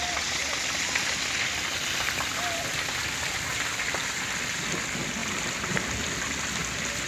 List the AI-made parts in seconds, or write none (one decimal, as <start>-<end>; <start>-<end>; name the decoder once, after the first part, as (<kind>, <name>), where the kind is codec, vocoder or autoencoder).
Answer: none